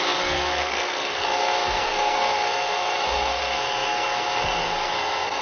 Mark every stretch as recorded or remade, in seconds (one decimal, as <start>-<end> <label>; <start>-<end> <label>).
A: 0.0-5.4 remade